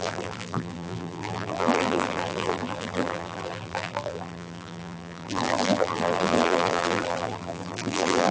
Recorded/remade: remade